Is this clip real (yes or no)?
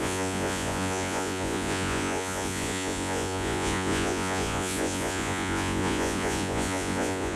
no